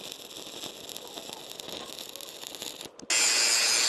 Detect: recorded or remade recorded